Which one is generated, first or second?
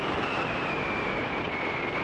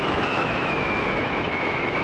second